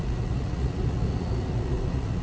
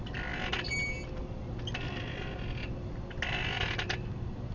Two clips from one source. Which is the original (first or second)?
second